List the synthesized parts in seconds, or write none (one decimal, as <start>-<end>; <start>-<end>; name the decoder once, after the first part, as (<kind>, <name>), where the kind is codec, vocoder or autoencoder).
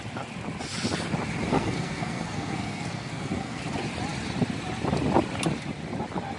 1.5-3.6 (codec, SNAC)